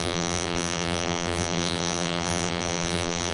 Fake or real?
fake